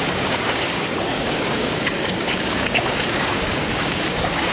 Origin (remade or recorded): remade